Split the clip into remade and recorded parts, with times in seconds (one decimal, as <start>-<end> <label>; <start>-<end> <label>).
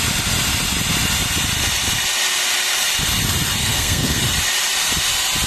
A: 0.0-3.6 recorded; 3.6-4.2 remade; 4.2-5.5 recorded